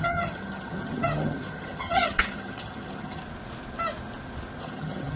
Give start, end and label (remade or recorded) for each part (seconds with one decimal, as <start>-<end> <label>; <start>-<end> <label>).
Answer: 0.0-3.2 remade; 3.2-4.6 recorded; 4.6-5.2 remade